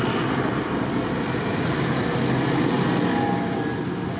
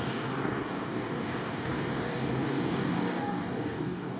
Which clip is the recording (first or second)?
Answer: first